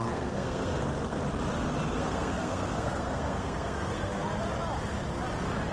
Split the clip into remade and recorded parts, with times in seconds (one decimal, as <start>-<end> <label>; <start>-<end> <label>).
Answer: 0.0-1.2 remade; 1.2-1.9 recorded; 1.9-4.1 remade; 4.1-5.7 recorded